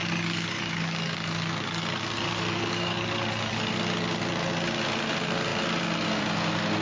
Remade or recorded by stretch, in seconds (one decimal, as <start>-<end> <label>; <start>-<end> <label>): 0.0-3.7 remade; 3.7-6.8 recorded